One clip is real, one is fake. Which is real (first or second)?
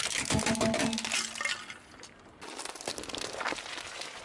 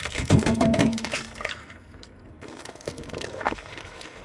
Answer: first